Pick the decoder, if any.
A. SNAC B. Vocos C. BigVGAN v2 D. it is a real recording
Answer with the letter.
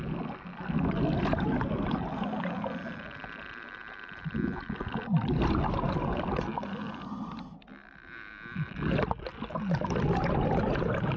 D